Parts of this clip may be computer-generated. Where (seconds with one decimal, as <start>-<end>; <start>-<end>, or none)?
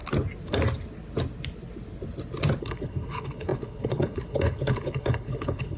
2.6-5.8